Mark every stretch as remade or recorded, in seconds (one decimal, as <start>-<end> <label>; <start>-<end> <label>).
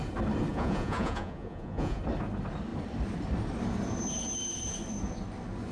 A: 0.0-0.5 recorded; 0.5-2.0 remade; 2.0-5.7 recorded